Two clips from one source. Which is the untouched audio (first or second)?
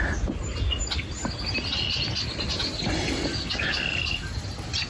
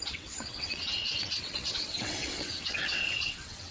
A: first